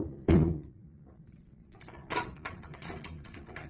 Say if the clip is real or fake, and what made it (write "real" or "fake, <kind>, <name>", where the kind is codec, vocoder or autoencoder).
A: fake, vocoder, Vocos